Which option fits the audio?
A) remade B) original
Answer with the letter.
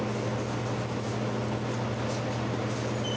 B